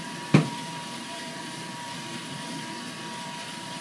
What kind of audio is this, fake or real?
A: fake